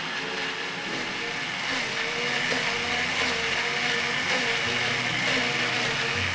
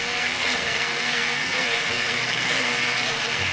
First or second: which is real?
first